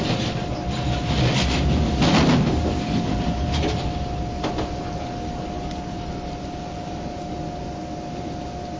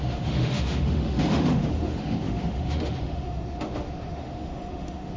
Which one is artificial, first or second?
second